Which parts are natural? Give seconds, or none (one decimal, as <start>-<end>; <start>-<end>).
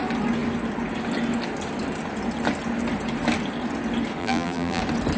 0.0-4.2; 4.8-5.2